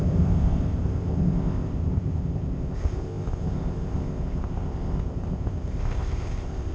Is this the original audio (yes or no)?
no